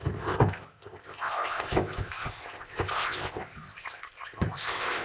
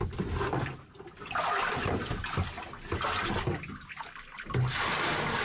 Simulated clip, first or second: first